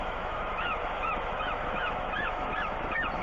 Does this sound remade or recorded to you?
remade